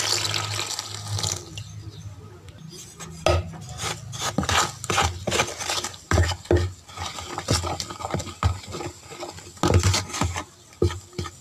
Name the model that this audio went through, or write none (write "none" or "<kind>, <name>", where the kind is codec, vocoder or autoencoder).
none